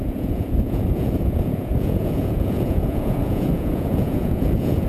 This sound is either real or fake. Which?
fake